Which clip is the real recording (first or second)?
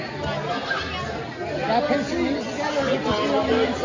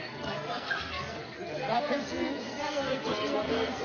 first